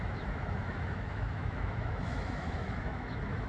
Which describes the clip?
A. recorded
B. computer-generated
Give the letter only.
B